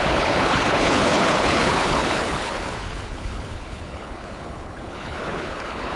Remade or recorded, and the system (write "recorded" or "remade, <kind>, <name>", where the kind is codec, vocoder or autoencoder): remade, codec, HILCodec